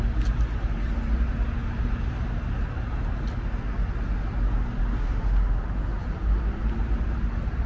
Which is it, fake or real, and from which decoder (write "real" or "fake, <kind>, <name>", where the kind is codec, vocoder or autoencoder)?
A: real